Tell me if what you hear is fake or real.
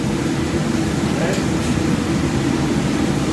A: real